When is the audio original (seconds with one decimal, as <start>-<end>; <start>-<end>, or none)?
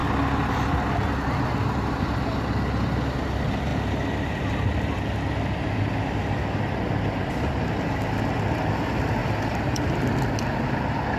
0.0-9.2; 9.9-11.2